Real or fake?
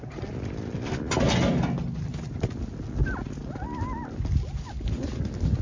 real